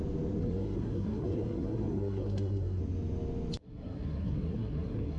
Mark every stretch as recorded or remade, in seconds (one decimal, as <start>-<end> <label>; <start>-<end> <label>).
0.0-0.4 recorded; 0.4-2.8 remade; 2.8-3.6 recorded; 3.6-5.2 remade